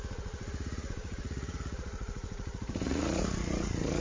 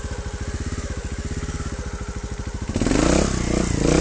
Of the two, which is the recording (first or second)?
second